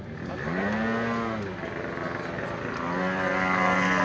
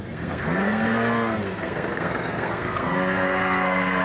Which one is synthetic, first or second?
second